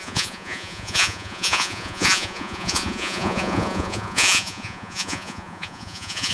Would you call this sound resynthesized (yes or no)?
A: yes